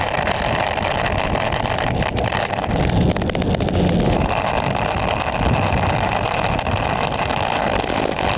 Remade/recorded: recorded